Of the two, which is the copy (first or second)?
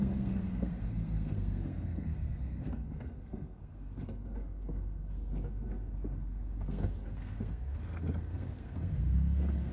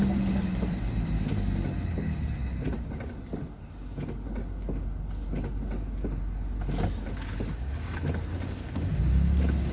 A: first